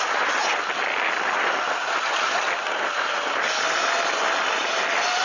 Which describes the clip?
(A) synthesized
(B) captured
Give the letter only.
B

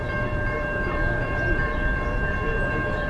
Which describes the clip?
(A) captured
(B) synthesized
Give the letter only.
B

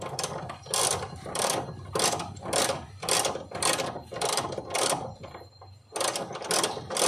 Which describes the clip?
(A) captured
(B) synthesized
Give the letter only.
A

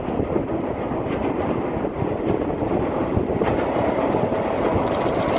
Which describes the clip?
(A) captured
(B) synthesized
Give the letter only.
A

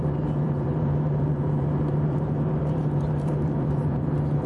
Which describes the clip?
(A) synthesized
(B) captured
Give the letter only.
A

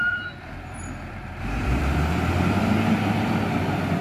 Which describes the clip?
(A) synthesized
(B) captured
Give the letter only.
A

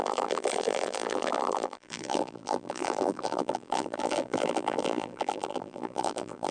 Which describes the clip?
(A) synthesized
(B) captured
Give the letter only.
A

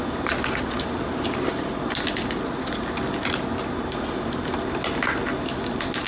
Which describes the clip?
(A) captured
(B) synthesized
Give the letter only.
A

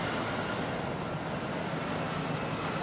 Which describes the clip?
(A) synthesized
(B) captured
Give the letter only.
B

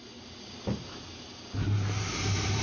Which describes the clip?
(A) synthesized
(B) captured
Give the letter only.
B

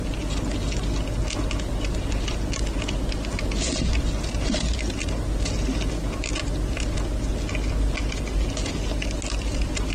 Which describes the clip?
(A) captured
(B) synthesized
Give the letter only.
A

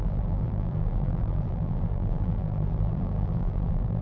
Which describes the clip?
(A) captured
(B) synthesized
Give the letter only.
B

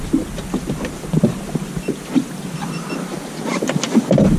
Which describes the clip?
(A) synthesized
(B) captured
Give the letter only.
A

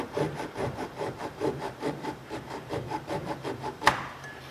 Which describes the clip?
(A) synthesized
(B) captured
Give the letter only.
A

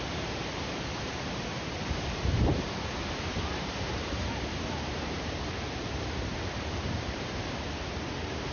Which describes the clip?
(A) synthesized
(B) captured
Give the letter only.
A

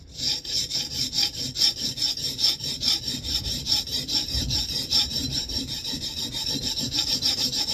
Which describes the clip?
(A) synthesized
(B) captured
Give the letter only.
A